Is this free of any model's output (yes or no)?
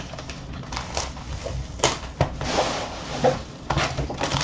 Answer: yes